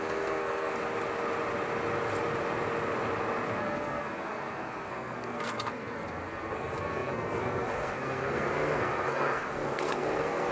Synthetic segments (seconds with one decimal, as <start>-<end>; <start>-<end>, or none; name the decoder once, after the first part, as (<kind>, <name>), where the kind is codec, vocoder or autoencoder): 0.0-0.7 (codec, SNAC); 3.6-10.5